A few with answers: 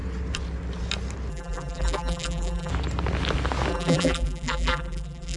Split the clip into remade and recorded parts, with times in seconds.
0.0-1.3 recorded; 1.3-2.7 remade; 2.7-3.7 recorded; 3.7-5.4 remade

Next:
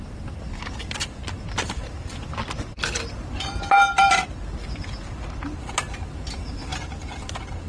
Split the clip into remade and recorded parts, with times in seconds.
0.0-7.7 recorded

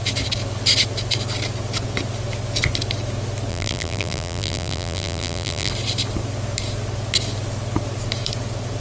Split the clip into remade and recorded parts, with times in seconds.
0.0-3.5 recorded; 3.5-5.7 remade; 5.7-8.8 recorded

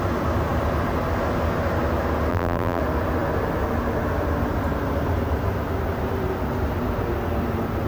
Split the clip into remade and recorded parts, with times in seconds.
0.0-2.3 recorded; 2.3-2.8 remade; 2.8-7.9 recorded

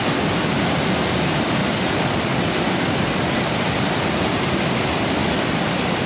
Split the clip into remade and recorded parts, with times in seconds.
0.0-1.6 recorded; 1.6-4.2 remade; 4.2-5.2 recorded; 5.2-6.1 remade